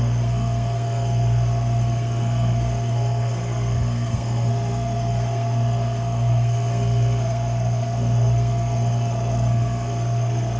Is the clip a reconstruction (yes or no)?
yes